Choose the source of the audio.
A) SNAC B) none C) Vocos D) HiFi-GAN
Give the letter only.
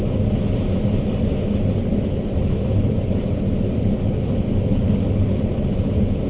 B